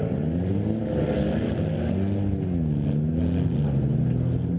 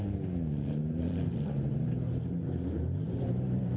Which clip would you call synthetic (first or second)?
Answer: second